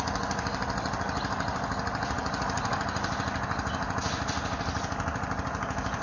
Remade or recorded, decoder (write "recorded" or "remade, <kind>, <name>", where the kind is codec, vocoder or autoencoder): recorded